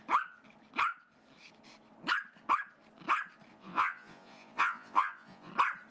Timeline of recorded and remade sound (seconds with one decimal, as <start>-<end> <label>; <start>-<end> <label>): 0.0-3.5 recorded; 3.5-5.5 remade; 5.5-5.9 recorded